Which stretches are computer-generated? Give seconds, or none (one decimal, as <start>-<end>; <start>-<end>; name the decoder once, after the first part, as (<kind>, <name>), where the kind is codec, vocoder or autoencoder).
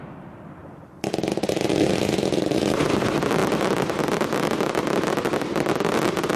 0.6-1.7 (vocoder, BigVGAN v2)